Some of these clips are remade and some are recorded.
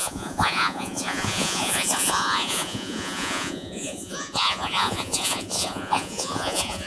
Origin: remade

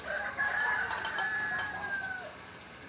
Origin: recorded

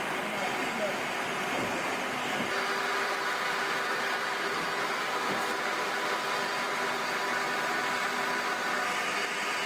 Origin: recorded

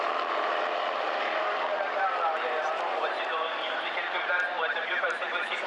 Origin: remade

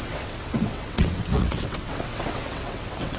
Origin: remade